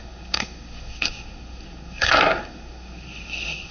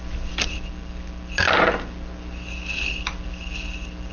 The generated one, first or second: first